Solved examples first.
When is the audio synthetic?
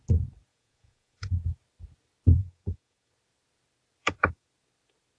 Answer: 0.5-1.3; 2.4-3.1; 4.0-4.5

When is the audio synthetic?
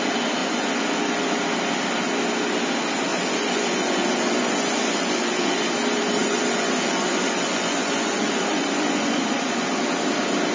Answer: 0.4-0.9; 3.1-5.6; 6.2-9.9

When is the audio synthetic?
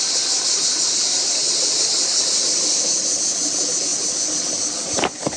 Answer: none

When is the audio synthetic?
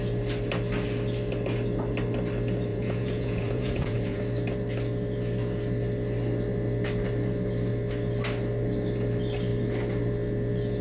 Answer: 2.7-4.2